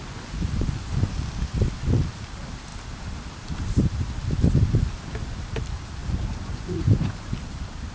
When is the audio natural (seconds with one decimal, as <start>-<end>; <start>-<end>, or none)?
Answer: 1.2-6.0; 7.3-7.9